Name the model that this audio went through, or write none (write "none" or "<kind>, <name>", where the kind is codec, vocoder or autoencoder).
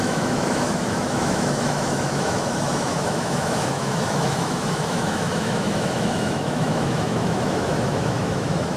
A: autoencoder, DAC-VAE